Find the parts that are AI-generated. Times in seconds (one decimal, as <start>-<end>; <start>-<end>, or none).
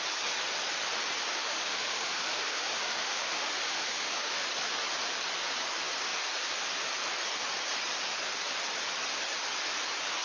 1.3-4.4